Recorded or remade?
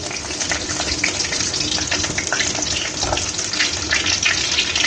recorded